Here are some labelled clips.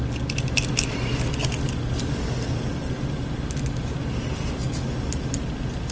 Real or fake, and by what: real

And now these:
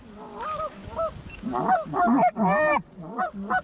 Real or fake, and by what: real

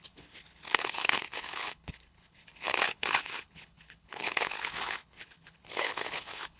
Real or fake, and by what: fake, codec, HILCodec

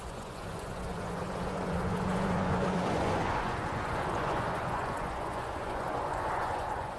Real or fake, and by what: fake, vocoder, Vocos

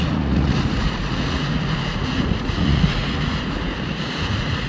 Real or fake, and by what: fake, vocoder, Vocos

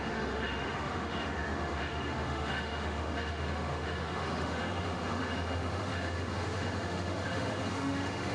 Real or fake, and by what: fake, autoencoder, DAC-VAE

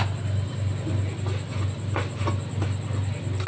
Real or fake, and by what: real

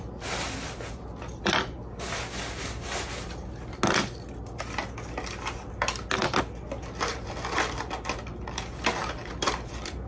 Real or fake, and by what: real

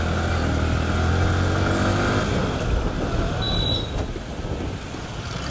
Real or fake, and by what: real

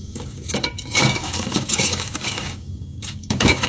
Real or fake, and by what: fake, codec, DAC